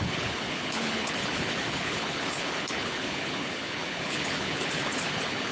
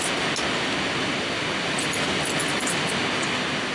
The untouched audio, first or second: second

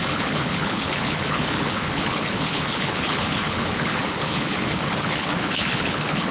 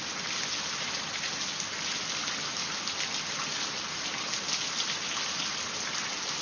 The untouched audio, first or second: second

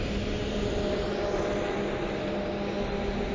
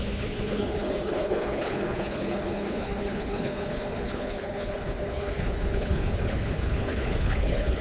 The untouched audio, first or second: first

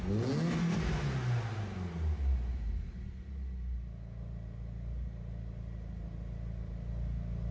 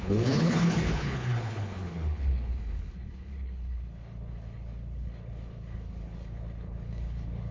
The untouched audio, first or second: first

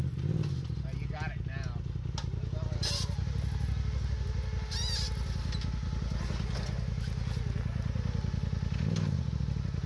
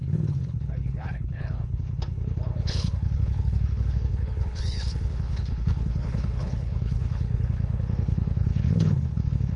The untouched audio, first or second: first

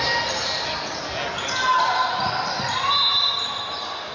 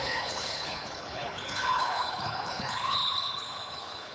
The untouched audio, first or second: first